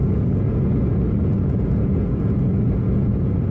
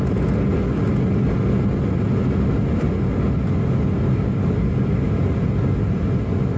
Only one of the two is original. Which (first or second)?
second